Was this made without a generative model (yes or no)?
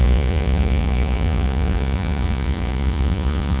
no